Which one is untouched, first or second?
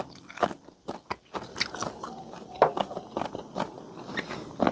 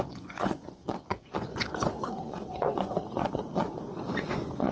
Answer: first